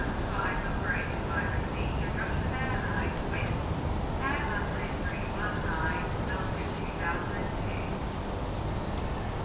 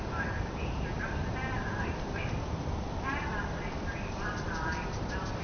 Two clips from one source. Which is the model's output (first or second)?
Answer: second